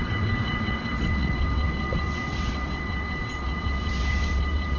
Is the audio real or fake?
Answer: fake